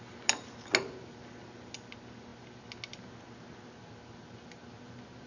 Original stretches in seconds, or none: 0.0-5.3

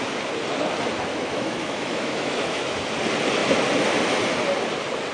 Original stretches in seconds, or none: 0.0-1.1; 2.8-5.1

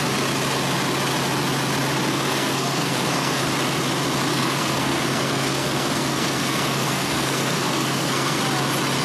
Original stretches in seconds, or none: 0.0-2.1; 3.4-4.3; 8.4-9.0